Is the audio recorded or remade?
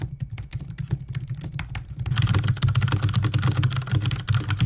recorded